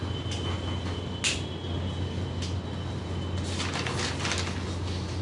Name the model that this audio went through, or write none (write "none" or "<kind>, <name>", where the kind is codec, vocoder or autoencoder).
none